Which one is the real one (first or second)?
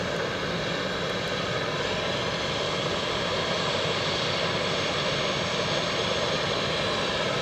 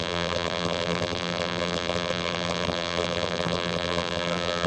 first